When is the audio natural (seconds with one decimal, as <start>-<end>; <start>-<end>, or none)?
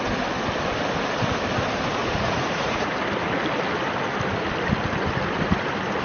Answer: 0.0-2.0; 2.9-6.0